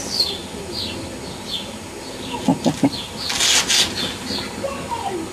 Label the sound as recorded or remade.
recorded